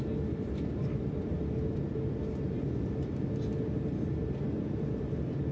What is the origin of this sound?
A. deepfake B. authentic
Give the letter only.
B